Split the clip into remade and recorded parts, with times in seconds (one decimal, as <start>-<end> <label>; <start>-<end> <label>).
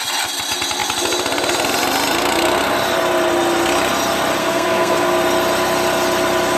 0.0-4.4 recorded; 4.4-5.1 remade; 5.1-6.6 recorded